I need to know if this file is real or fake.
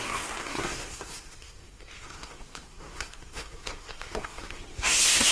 fake